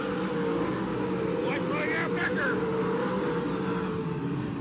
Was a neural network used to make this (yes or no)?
no